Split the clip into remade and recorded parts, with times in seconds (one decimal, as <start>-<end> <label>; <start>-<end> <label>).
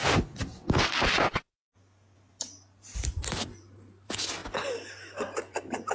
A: 0.0-5.9 recorded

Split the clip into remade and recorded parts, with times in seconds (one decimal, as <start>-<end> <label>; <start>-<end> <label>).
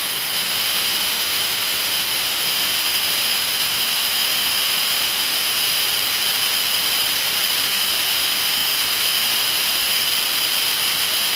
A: 0.0-5.8 remade; 5.8-7.6 recorded; 7.6-10.1 remade; 10.1-11.0 recorded; 11.0-11.4 remade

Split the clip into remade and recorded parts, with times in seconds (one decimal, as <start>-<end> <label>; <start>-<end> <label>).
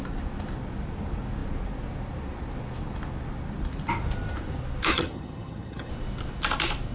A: 0.0-4.9 recorded; 4.9-5.9 remade; 5.9-6.9 recorded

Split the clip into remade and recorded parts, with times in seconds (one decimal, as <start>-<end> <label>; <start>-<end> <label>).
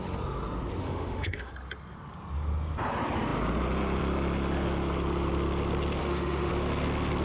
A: 0.0-0.8 recorded; 0.8-1.5 remade; 1.5-6.0 recorded; 6.0-6.5 remade; 6.5-7.2 recorded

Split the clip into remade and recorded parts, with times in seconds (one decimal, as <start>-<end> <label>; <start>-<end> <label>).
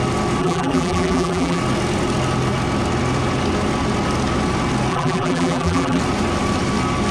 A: 0.0-0.4 recorded; 0.4-1.6 remade; 1.6-4.9 recorded; 4.9-6.0 remade; 6.0-7.1 recorded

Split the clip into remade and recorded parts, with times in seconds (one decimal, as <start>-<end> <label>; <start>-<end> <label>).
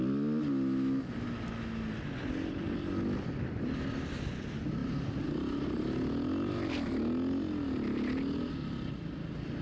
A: 0.0-4.8 recorded; 4.8-5.8 remade; 5.8-9.6 recorded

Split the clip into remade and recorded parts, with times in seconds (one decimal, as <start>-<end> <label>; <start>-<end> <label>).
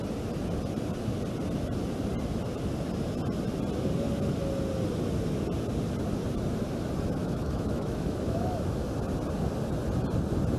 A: 0.0-7.2 recorded; 7.2-8.9 remade; 8.9-10.6 recorded